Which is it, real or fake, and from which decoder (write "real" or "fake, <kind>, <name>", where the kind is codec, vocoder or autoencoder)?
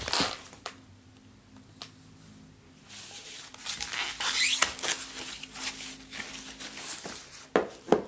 real